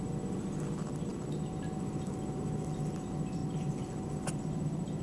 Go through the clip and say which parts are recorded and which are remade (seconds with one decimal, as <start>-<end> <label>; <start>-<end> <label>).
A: 0.0-5.0 recorded